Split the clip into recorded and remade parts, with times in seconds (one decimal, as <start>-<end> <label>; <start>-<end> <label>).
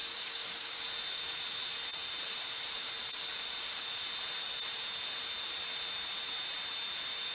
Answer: 0.0-0.8 remade; 0.8-7.3 recorded